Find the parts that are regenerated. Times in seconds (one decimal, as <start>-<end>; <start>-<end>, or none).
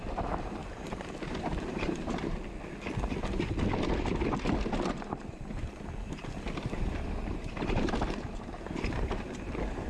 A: 0.0-2.3; 4.9-5.6; 6.6-9.9